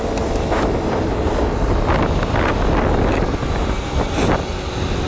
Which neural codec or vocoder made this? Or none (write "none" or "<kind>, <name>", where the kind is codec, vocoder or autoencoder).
none